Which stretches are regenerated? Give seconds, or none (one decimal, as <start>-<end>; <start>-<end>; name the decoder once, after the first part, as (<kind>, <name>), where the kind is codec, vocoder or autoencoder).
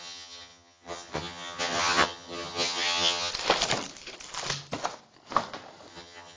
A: 0.0-3.3 (vocoder, HiFi-GAN); 5.9-6.4